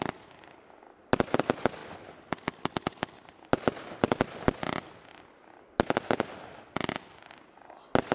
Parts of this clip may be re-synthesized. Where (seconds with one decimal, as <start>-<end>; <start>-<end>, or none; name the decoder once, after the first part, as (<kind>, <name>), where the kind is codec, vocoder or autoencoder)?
none